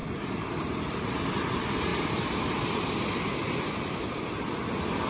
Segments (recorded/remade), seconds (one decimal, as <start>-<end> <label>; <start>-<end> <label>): 0.0-5.1 recorded